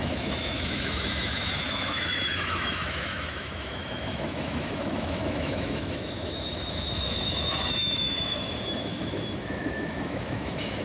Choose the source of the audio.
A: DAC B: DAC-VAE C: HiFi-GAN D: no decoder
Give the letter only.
B